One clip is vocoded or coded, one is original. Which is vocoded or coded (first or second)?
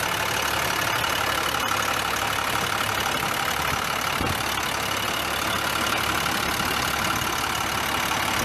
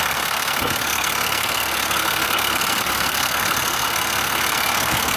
second